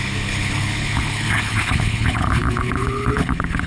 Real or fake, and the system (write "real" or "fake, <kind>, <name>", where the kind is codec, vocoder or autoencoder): fake, codec, HILCodec